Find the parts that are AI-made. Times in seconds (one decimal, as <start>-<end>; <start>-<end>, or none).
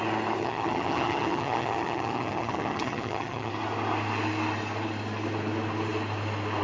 0.4-3.5